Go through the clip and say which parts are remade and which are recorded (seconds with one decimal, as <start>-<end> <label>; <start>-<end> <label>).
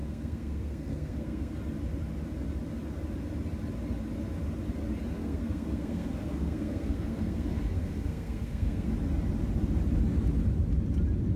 0.0-1.6 remade; 1.6-5.2 recorded; 5.2-8.9 remade; 8.9-11.4 recorded